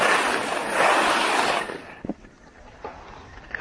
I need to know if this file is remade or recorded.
recorded